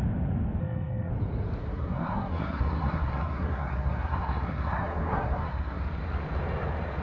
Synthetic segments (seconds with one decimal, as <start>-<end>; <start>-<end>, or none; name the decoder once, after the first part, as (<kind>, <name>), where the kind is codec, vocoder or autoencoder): 0.6-1.1 (codec, SNAC); 1.6-5.8